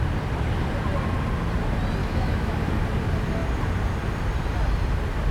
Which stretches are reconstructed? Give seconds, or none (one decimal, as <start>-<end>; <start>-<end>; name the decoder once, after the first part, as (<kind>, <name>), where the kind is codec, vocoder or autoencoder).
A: 2.0-2.8 (autoencoder, DAC-VAE)